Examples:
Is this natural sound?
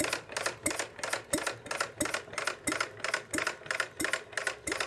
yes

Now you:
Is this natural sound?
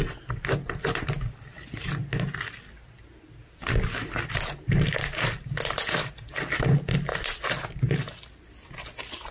yes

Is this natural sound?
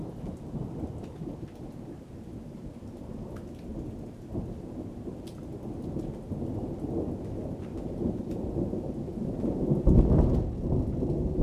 yes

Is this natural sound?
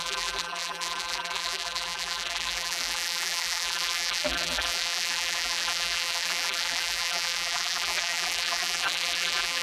no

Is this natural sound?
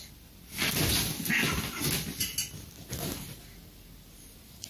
yes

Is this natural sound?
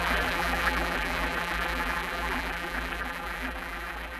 no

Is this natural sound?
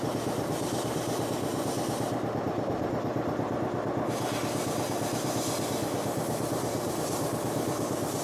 no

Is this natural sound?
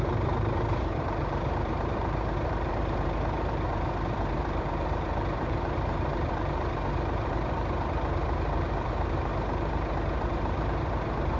no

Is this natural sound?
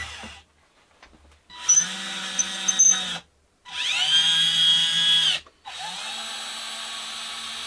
yes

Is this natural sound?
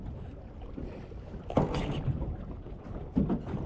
yes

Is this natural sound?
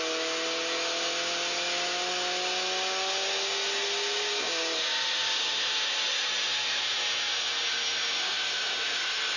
yes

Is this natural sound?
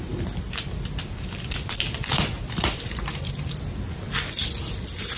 no